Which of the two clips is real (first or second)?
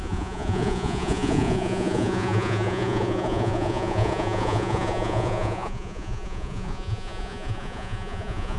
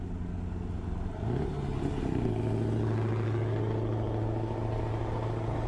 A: second